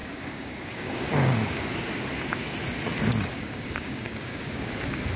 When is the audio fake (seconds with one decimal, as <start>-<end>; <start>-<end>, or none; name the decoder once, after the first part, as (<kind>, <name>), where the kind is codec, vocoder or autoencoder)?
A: 0.0-2.0 (codec, DAC); 3.3-4.7